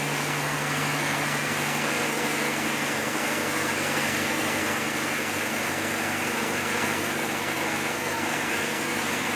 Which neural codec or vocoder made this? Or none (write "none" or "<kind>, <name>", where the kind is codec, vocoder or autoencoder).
codec, SNAC